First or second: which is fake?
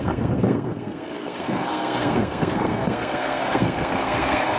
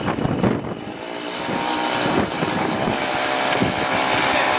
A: first